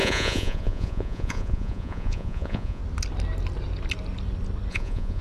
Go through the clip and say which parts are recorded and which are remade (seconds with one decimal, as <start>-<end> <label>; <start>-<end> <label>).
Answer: 0.0-2.8 remade; 2.8-4.7 recorded; 4.7-5.2 remade